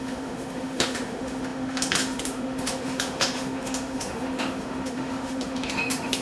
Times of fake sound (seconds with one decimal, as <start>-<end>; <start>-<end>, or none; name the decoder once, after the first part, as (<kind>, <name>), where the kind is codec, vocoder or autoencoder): 0.0-6.2 (autoencoder, DAC-VAE)